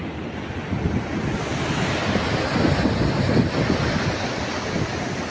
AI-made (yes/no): no